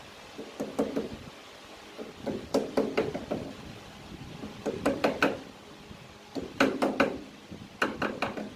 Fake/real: real